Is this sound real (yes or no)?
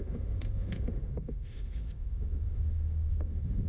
no